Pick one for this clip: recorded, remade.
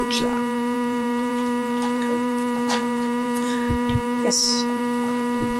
remade